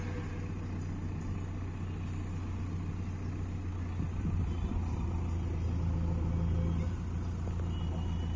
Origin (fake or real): real